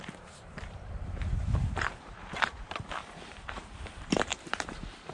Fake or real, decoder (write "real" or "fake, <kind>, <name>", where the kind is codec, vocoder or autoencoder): fake, vocoder, BigVGAN v2